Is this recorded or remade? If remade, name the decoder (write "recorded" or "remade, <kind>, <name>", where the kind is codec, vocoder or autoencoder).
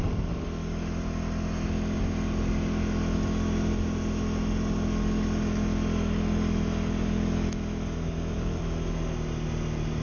recorded